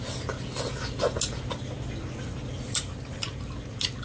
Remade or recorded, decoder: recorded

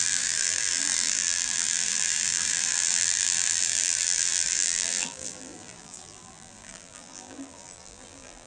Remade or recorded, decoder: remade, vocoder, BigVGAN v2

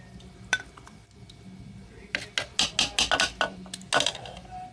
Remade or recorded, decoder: recorded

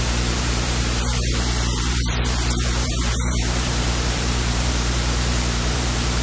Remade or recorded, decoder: remade, vocoder, BigVGAN v2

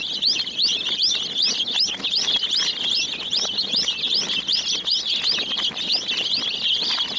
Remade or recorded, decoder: recorded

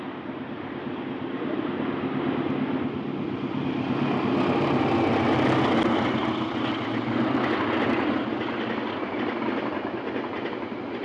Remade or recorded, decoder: recorded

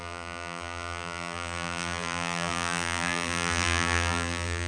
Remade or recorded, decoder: remade, vocoder, BigVGAN v2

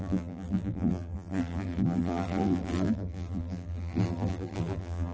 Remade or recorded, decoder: remade, vocoder, BigVGAN v2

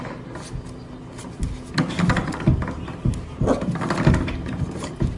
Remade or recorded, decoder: recorded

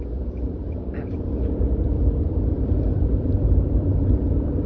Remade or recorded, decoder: remade, vocoder, BigVGAN v2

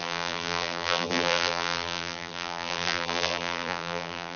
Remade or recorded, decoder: remade, vocoder, BigVGAN v2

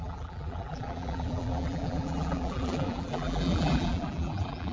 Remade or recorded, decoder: remade, vocoder, BigVGAN v2